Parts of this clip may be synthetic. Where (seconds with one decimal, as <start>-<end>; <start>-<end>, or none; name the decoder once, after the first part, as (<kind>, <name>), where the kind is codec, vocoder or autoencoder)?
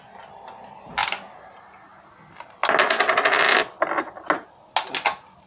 none